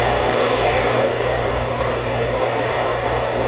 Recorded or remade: remade